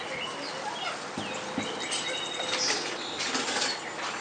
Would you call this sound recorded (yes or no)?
yes